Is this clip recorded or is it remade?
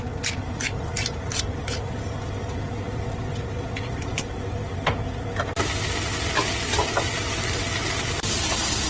recorded